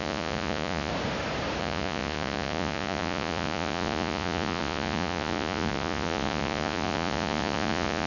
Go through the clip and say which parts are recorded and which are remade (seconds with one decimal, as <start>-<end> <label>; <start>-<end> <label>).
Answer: 0.0-0.9 remade; 0.9-1.6 recorded; 1.6-8.1 remade